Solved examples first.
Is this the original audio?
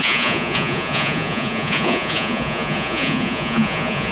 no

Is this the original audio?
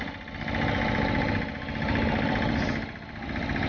yes